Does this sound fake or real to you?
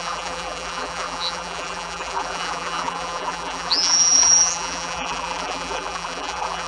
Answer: fake